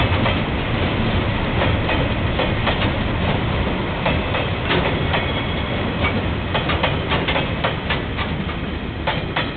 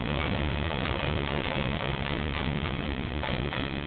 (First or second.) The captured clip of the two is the first